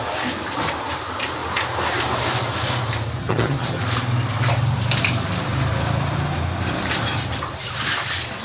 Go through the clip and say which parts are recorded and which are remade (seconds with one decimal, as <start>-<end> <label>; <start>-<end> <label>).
0.0-3.2 recorded; 3.2-3.8 remade; 3.8-8.4 recorded